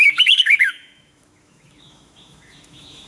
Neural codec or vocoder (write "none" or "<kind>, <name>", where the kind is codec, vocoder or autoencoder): autoencoder, DAC-VAE